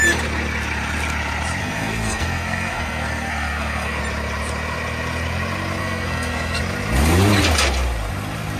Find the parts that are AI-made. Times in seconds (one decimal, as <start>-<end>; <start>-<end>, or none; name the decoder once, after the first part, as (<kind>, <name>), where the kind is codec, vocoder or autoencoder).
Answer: 1.6-4.0 (codec, SNAC); 5.8-6.6